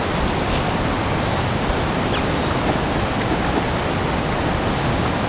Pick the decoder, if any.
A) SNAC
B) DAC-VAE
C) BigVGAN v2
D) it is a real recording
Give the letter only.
D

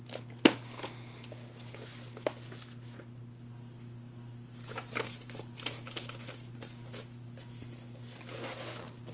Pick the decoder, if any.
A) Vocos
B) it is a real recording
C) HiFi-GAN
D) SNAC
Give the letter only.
B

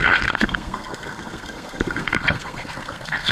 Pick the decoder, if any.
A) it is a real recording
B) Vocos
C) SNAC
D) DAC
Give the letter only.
C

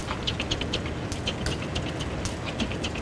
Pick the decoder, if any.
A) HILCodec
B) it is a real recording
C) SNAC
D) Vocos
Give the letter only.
B